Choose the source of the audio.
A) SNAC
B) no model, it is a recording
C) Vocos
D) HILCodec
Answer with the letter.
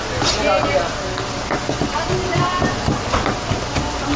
B